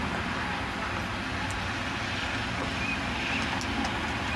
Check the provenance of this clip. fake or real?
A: real